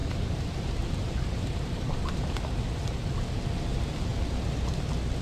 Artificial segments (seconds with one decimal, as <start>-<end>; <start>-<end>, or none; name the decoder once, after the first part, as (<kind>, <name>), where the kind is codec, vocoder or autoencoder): 0.0-3.1 (vocoder, BigVGAN v2)